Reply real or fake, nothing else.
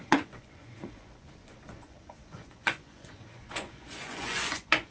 fake